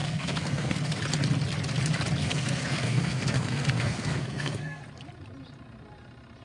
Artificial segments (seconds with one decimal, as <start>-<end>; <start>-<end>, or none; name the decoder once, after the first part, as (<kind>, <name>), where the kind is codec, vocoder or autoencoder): 0.0-1.0 (codec, SNAC); 2.2-4.8